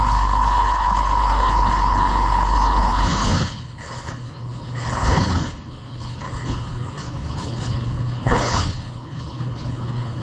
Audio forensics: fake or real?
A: fake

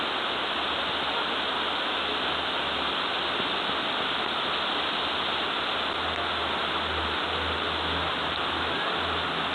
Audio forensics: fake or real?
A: real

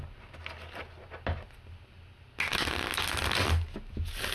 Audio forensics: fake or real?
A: real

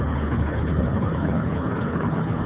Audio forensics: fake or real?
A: fake